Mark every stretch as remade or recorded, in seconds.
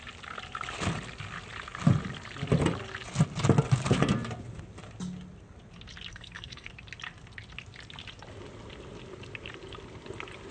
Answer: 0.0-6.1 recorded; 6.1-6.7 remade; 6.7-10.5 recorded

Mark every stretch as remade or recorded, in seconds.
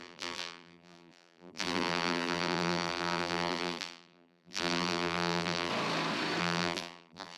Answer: 0.0-5.7 remade; 5.7-6.4 recorded; 6.4-7.4 remade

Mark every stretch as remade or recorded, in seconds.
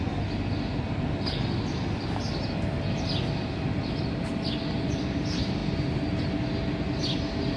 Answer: 0.0-7.6 recorded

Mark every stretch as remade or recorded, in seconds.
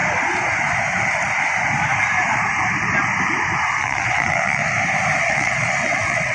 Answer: 0.0-3.8 recorded; 3.8-4.6 remade; 4.6-5.2 recorded; 5.2-6.3 remade